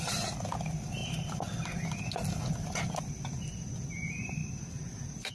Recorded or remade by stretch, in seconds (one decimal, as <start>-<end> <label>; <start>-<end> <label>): 0.0-5.3 recorded